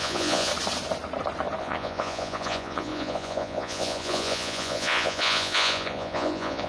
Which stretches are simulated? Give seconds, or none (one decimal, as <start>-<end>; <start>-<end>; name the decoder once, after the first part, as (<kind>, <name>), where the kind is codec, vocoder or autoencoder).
0.0-0.5 (vocoder, Vocos); 1.6-6.7

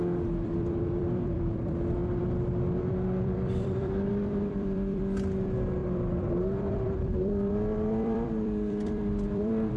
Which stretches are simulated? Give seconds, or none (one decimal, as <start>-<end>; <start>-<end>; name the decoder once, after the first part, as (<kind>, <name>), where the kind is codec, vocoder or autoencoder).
0.0-9.8 (vocoder, BigVGAN v2)

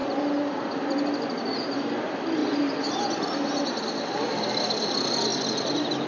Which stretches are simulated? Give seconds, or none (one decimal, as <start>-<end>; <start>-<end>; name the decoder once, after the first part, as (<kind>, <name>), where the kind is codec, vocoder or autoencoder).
5.3-6.1 (vocoder, BigVGAN v2)